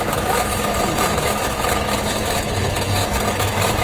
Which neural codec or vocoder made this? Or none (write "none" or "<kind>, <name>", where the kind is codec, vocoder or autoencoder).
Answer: autoencoder, DAC-VAE